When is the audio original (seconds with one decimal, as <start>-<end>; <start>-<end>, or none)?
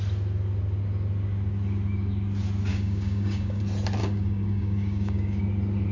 0.0-2.7; 3.6-4.0; 5.4-5.9